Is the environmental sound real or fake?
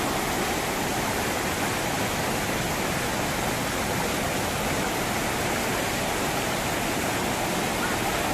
real